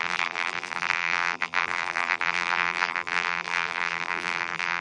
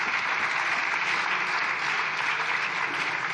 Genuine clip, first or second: second